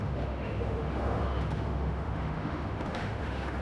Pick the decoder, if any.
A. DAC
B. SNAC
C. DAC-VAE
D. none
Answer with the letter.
C